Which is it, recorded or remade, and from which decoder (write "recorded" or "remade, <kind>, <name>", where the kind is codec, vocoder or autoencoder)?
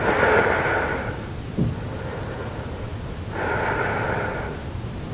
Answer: recorded